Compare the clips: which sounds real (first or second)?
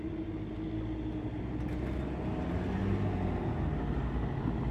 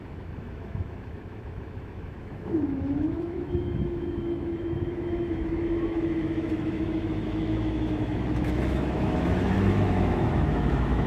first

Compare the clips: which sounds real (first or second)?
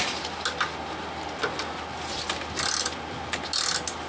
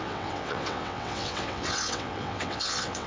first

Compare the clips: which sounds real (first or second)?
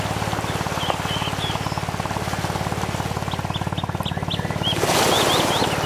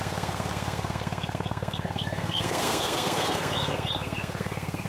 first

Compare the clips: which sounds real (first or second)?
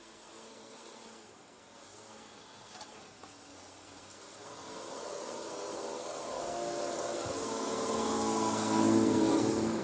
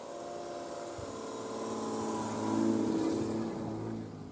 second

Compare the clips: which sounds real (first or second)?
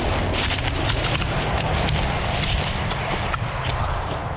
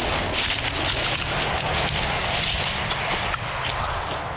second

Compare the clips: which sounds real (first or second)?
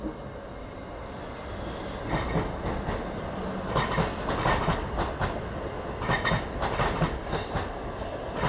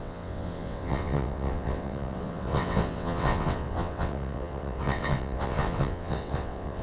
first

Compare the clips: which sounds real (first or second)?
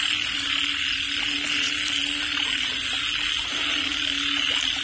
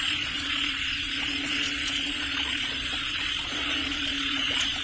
first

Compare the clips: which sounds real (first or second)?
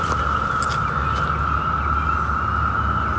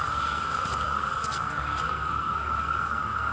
first